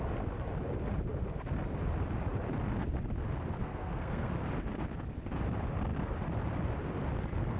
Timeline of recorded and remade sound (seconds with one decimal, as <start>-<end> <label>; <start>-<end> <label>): 0.0-3.6 recorded; 3.6-4.3 remade; 4.3-7.6 recorded